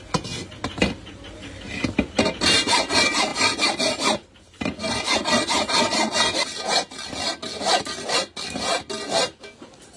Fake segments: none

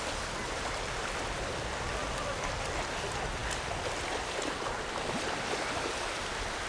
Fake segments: none

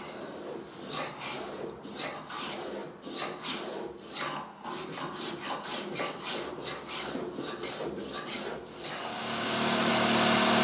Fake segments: 9.2-9.9 (codec, DAC)

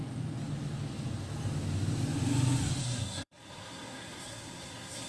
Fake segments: 2.8-5.1 (codec, SNAC)

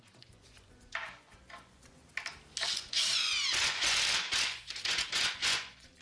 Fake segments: 0.0-2.0 (vocoder, Vocos); 2.7-6.0

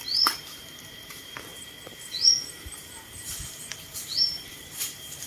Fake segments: 0.0-1.5 (vocoder, BigVGAN v2); 2.1-5.3

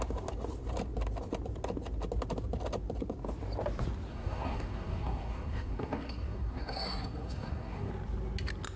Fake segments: 4.1-7.9 (codec, SNAC)

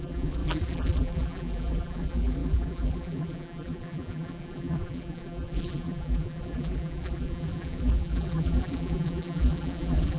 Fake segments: 0.0-10.2 (vocoder, BigVGAN v2)